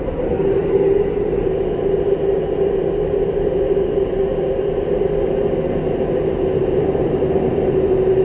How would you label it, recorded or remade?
recorded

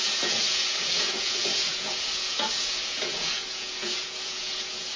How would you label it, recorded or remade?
remade